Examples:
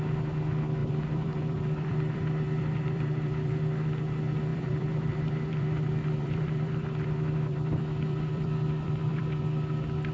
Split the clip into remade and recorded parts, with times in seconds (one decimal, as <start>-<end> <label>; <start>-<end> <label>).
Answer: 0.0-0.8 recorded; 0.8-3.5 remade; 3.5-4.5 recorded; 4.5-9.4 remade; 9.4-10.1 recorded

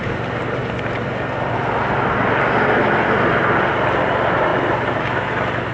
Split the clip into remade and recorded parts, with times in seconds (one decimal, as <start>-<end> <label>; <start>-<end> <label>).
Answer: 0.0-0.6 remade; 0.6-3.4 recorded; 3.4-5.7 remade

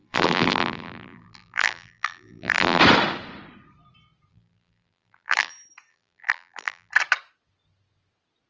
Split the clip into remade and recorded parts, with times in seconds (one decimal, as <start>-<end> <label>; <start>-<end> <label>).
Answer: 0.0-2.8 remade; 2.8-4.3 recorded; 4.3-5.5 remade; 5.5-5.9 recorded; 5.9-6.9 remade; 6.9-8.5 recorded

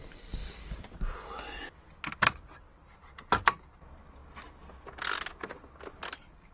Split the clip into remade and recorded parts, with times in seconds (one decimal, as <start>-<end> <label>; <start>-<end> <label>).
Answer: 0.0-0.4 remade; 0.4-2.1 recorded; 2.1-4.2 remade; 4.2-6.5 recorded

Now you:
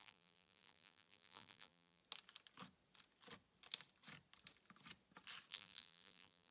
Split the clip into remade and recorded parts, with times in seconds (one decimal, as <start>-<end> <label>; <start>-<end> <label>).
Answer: 0.0-2.0 remade; 2.0-5.5 recorded; 5.5-6.5 remade

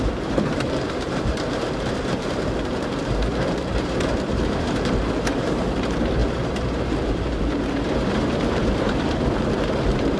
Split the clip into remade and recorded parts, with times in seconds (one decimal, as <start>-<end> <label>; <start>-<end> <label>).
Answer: 0.0-10.2 remade

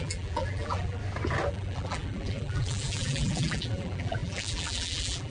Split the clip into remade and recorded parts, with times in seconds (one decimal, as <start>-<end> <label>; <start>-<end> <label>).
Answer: 0.0-1.0 remade; 1.0-1.5 recorded; 1.5-5.3 remade

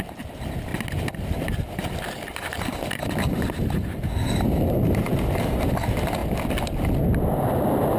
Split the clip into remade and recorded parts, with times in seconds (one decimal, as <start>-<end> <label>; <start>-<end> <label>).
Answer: 0.0-0.7 recorded; 0.7-4.4 remade; 4.4-6.2 recorded; 6.2-6.8 remade; 6.8-8.0 recorded